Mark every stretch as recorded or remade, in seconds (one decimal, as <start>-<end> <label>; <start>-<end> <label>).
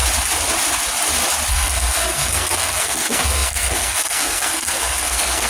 0.0-1.5 recorded; 1.5-5.5 remade